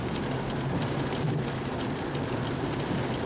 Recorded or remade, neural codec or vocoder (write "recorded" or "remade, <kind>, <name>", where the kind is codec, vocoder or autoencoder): recorded